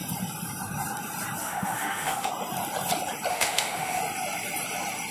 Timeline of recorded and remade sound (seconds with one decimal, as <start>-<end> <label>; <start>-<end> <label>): 0.0-1.4 recorded; 1.4-2.3 remade; 2.3-3.3 recorded; 3.3-4.0 remade; 4.0-5.1 recorded